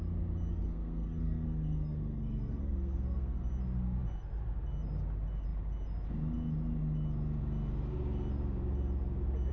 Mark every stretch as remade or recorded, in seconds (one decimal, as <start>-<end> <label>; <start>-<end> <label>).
0.0-0.5 recorded; 0.5-3.4 remade; 3.4-9.5 recorded